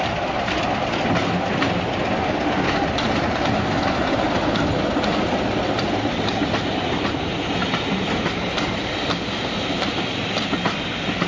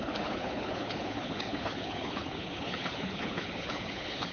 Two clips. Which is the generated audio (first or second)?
second